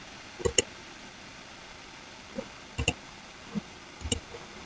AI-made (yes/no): no